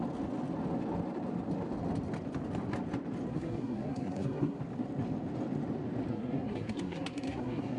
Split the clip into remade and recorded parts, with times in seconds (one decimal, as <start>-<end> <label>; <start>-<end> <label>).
0.0-3.3 recorded; 3.3-4.6 remade; 4.6-6.1 recorded; 6.1-7.8 remade